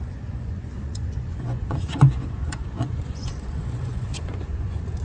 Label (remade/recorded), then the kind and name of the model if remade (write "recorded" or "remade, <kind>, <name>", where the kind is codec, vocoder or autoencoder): remade, vocoder, Vocos